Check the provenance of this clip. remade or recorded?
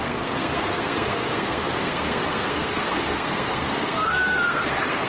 remade